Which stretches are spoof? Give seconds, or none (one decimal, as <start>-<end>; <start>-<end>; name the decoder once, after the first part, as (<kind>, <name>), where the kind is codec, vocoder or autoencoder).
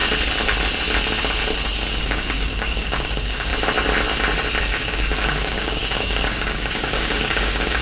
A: 2.0-3.5 (codec, DAC); 4.6-7.8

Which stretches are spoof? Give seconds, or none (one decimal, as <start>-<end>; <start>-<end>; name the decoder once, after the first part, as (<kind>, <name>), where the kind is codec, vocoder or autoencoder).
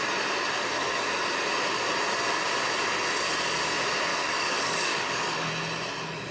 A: 0.6-1.1 (codec, DAC); 4.1-5.5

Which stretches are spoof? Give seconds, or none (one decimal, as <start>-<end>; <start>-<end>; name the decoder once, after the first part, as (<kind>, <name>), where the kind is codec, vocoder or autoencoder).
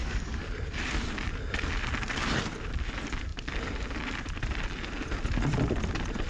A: 0.0-0.6 (codec, DAC)